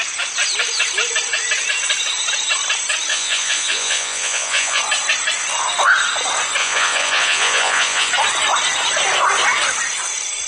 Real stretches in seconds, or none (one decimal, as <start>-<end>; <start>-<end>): 0.0-3.1; 4.8-6.6; 8.1-10.5